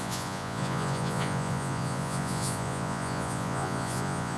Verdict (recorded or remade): remade